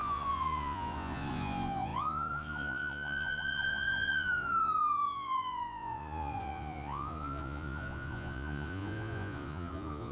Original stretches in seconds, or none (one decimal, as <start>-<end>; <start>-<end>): none